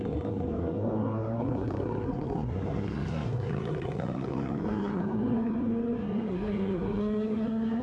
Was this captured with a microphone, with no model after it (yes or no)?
no